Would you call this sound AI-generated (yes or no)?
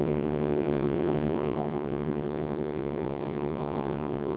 yes